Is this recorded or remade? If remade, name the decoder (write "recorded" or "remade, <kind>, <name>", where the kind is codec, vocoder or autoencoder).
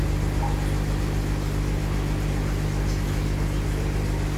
recorded